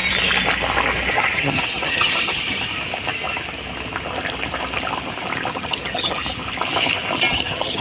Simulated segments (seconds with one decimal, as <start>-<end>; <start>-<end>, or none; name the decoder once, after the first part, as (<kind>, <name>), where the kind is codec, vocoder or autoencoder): 1.1-2.7 (vocoder, HiFi-GAN); 5.5-6.2; 7.3-7.8